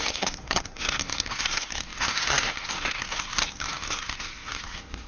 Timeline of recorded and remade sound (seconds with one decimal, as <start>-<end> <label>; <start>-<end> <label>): 0.0-5.1 remade